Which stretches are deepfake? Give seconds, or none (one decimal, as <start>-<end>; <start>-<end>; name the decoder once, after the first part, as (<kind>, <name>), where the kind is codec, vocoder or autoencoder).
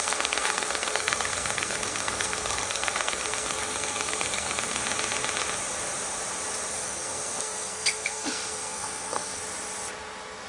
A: 0.0-4.8 (codec, SNAC); 6.7-9.4